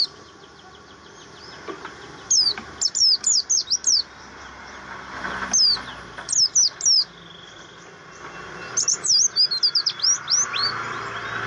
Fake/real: real